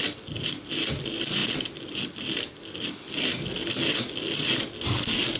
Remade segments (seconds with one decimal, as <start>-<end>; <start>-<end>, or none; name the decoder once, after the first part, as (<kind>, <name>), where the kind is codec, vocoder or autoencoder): none